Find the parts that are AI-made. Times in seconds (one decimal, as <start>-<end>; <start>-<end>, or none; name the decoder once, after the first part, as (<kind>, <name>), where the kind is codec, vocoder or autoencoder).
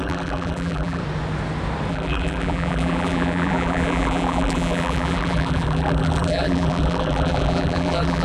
0.0-1.0 (vocoder, BigVGAN v2); 1.9-8.2